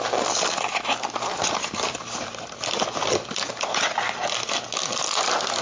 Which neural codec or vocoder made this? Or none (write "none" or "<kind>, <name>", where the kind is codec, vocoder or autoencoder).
none